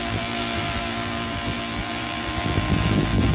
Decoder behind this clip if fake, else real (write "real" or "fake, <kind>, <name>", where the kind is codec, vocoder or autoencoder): fake, vocoder, BigVGAN v2